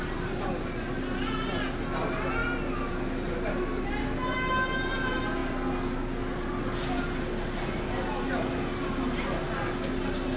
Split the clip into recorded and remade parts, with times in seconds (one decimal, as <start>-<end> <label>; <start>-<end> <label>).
0.0-10.4 recorded